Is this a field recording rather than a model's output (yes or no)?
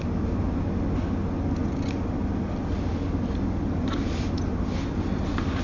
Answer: yes